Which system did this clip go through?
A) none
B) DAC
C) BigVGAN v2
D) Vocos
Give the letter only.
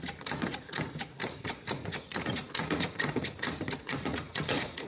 D